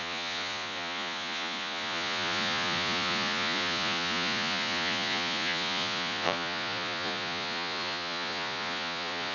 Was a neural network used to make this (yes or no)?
yes